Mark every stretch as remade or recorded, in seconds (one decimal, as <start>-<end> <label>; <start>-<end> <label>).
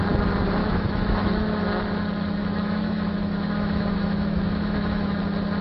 0.0-0.6 recorded; 0.6-1.3 remade; 1.3-2.4 recorded; 2.4-5.1 remade; 5.1-5.6 recorded